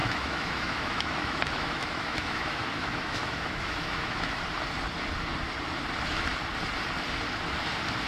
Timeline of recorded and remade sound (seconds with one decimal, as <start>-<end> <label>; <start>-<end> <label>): 0.0-4.4 remade; 4.4-8.1 recorded